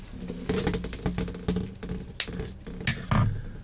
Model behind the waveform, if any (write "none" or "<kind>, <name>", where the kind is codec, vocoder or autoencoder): none